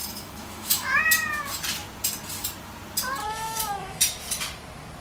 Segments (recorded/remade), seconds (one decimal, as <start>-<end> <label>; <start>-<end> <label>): 0.0-1.0 remade; 1.0-3.2 recorded; 3.2-4.0 remade; 4.0-5.0 recorded